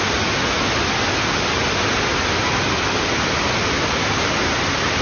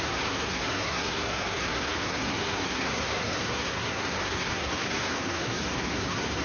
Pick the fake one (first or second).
second